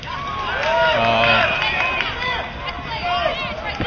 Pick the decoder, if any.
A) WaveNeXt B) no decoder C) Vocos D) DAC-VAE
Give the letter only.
B